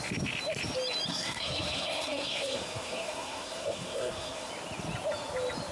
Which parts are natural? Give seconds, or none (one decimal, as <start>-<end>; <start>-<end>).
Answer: 0.0-1.1; 4.5-5.7

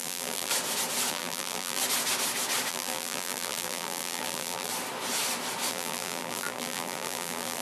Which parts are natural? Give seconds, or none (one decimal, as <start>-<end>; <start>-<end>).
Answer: 0.5-1.1; 1.8-2.7; 4.7-5.7

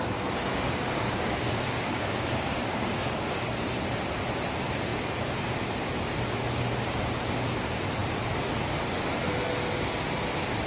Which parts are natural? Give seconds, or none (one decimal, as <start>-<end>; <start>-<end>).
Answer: 0.0-0.5; 3.6-10.7

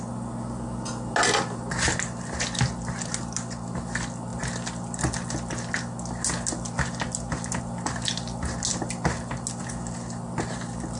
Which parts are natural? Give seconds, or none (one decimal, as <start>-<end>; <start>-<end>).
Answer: 0.0-11.0